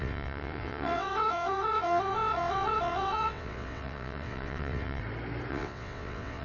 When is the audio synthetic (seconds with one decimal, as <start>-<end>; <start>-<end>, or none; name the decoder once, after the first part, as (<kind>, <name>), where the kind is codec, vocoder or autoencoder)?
0.0-5.0 (vocoder, WaveNeXt); 5.5-6.4

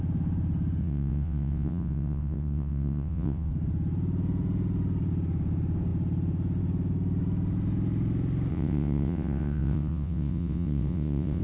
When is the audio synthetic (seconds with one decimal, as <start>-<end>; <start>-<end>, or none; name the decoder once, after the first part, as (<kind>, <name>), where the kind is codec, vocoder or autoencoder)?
0.8-3.5 (vocoder, WaveNeXt); 8.5-11.4

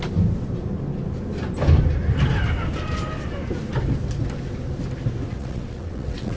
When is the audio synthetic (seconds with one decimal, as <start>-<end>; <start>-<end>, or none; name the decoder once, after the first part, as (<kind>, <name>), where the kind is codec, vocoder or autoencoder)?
5.3-6.4 (vocoder, WaveNeXt)

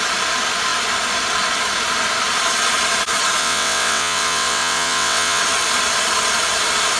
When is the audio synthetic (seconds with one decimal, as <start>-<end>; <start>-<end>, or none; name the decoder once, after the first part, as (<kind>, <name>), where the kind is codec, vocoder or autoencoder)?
3.4-5.4 (vocoder, WaveNeXt)

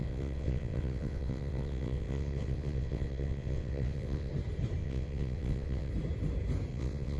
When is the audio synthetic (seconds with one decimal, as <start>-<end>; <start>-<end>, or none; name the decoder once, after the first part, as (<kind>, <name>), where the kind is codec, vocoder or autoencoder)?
0.0-4.3 (vocoder, WaveNeXt); 4.8-5.9; 6.7-7.2

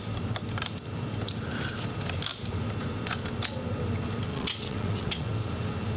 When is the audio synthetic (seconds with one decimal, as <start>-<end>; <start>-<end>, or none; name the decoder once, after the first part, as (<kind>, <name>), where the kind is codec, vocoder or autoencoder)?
4.3-5.3 (vocoder, WaveNeXt)

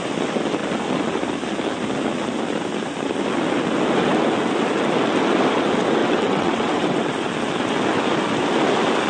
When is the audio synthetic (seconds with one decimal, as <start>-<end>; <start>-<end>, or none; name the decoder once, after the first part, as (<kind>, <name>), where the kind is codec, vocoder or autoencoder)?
6.0-7.1 (vocoder, WaveNeXt)

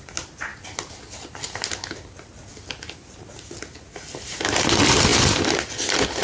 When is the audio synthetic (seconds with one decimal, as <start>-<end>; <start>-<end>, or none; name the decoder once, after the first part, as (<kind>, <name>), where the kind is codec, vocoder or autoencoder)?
none